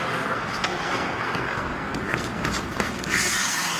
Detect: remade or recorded remade